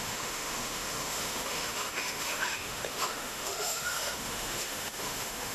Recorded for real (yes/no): no